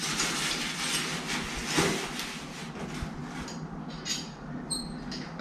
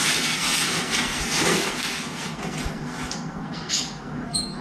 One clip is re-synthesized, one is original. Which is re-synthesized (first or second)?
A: second